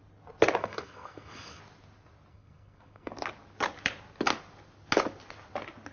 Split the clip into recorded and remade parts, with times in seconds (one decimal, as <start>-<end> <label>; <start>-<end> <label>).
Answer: 0.0-0.6 recorded; 0.6-1.6 remade; 1.6-2.3 recorded; 2.3-3.1 remade; 3.1-5.9 recorded